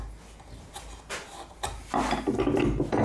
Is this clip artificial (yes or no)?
no